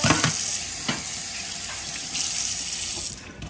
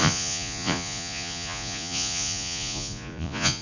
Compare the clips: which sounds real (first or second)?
first